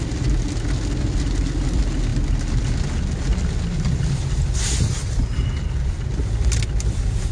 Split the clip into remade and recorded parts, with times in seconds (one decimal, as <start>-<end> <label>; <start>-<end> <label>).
0.0-7.3 recorded